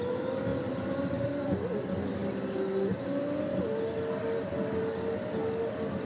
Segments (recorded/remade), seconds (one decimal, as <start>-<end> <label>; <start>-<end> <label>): 0.0-6.1 recorded